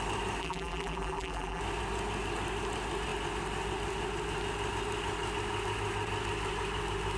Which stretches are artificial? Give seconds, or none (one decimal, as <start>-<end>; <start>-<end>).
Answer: 0.4-1.6

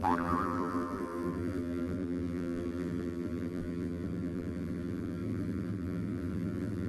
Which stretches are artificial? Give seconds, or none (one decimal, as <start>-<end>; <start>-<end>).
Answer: 0.0-6.9